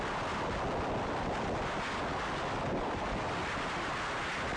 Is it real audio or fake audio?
real